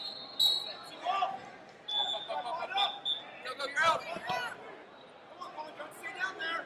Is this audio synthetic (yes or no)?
no